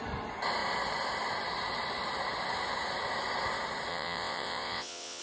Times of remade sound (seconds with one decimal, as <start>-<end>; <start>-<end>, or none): 3.9-5.2